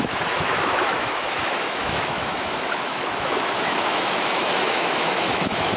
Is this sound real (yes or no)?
no